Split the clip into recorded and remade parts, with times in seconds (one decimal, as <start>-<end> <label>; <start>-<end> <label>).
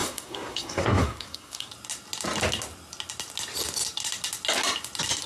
0.0-1.7 remade; 1.7-5.3 recorded